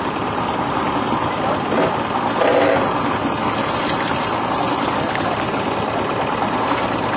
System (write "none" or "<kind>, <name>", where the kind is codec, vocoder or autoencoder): none